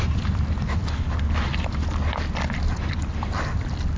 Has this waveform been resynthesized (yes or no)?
no